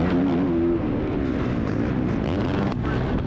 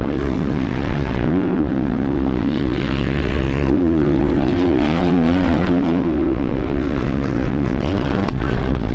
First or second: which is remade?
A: second